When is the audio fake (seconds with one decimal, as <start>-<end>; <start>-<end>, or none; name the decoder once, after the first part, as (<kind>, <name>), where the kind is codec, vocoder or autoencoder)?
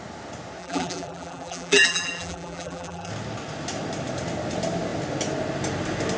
0.6-3.1 (vocoder, BigVGAN v2)